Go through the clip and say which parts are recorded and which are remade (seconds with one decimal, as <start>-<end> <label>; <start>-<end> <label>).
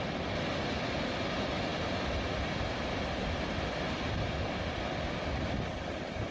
0.0-6.3 recorded